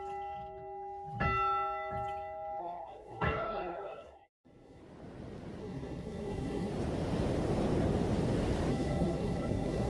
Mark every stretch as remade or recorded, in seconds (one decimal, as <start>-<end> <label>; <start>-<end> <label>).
0.0-2.6 recorded; 2.6-4.8 remade; 4.8-5.6 recorded; 5.6-6.7 remade; 6.7-8.7 recorded; 8.7-9.9 remade